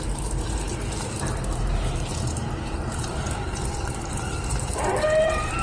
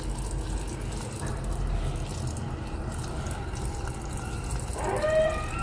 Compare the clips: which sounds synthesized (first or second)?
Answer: first